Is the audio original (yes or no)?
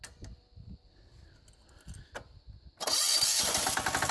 yes